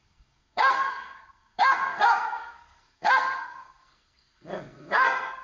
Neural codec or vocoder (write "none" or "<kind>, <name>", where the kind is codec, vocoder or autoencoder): codec, SNAC